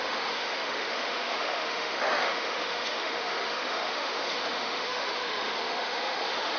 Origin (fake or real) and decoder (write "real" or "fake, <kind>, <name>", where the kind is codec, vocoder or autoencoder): fake, autoencoder, DAC-VAE